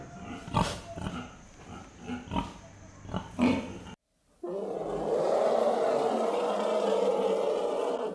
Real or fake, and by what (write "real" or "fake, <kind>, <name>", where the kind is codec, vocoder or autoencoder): real